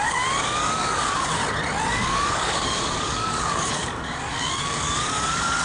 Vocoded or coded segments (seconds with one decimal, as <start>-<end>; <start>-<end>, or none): 0.0-1.4; 1.9-5.6